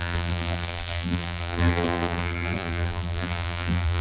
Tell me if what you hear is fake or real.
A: fake